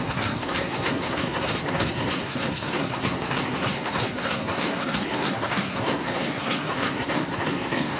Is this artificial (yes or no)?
yes